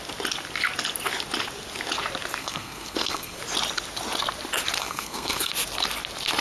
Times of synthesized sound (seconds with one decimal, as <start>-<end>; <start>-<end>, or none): 2.4-3.4; 4.8-5.5